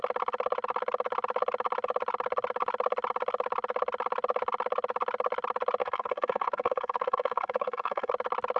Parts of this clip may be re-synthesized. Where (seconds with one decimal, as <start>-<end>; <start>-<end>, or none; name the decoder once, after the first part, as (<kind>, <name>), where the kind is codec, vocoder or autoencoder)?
5.8-8.1 (codec, SNAC)